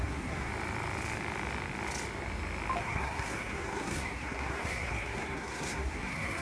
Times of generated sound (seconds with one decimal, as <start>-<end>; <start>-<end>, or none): 0.0-0.5; 2.8-6.4

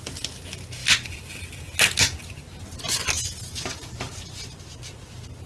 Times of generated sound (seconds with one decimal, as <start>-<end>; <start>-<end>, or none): none

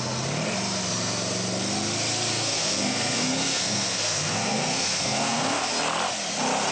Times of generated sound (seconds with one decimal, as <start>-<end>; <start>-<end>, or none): 2.3-5.7

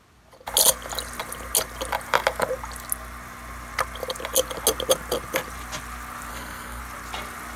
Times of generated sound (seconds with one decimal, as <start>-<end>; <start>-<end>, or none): 6.3-6.8

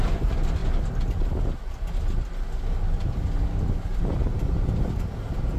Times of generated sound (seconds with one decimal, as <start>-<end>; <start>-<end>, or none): none